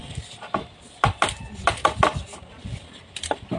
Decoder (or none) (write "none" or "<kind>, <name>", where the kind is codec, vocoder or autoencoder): none